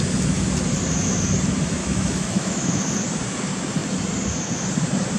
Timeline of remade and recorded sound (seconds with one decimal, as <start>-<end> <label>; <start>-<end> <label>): 0.0-1.8 recorded; 1.8-2.8 remade; 2.8-5.2 recorded